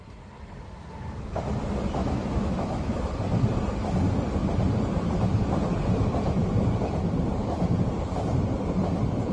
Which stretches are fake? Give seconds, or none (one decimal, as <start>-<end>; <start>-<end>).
2.0-3.0